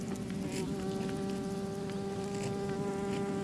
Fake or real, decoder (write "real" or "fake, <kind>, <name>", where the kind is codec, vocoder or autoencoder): real